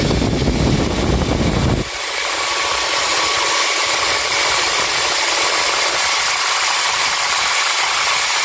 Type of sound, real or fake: real